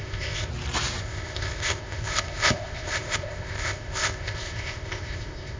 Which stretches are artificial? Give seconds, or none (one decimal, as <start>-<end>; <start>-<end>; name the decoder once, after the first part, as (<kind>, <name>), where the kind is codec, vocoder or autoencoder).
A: 0.0-0.5 (codec, ZipCodec); 1.0-5.6